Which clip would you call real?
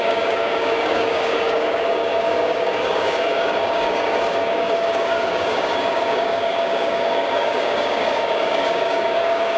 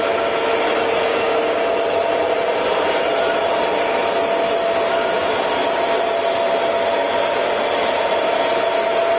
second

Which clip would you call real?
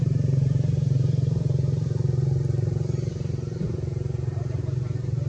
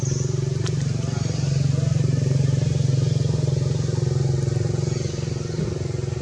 second